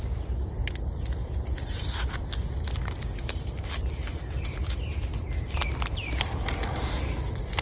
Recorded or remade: recorded